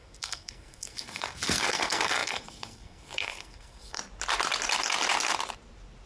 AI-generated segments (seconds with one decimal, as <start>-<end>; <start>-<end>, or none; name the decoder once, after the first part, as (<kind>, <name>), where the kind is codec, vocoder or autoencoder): 0.0-4.0 (codec, SNAC)